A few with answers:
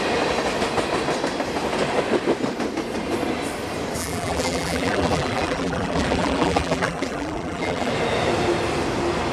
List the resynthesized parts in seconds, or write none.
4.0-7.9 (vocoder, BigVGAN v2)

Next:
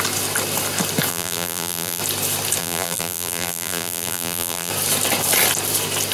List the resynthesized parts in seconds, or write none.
1.1-2.0 (vocoder, BigVGAN v2); 2.6-4.7

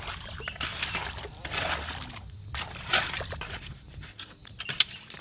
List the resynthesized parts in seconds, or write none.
none

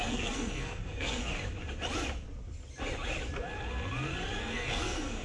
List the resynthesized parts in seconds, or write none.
0.0-1.3 (codec, SNAC); 4.4-5.2

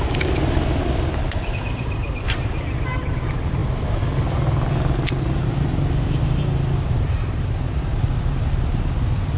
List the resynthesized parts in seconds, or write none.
none